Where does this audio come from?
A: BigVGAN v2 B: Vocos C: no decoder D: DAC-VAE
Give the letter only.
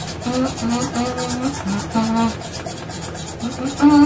C